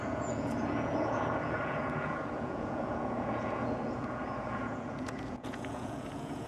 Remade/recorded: remade